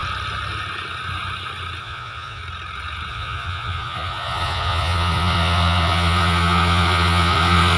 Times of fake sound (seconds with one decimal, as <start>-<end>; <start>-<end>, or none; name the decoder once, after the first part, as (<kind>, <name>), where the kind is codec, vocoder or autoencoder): 1.8-2.4 (vocoder, Vocos); 3.1-7.8